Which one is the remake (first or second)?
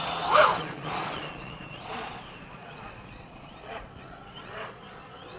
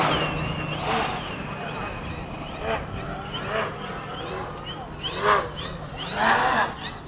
first